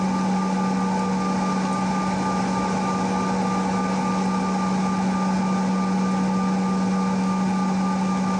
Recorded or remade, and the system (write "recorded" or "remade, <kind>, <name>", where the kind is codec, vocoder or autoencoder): recorded